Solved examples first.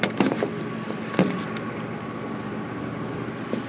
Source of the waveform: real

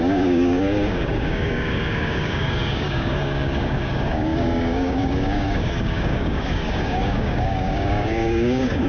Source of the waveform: fake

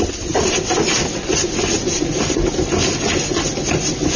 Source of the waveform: real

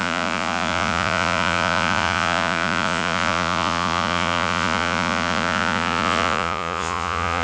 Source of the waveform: fake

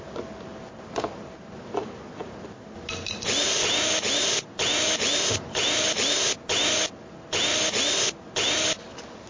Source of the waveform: real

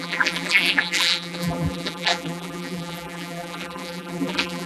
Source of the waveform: fake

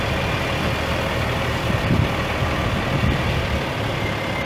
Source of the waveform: real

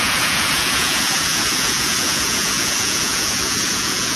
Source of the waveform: fake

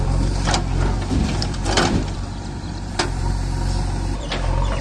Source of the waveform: fake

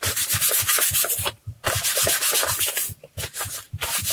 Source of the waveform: real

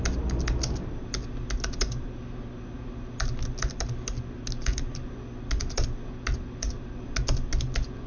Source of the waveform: real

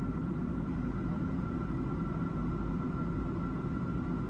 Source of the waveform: real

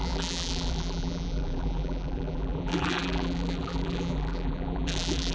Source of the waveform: fake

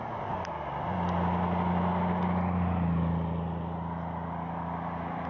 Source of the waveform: real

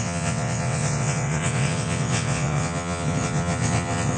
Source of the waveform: fake